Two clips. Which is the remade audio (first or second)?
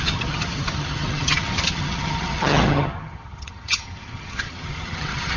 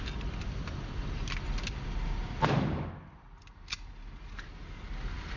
first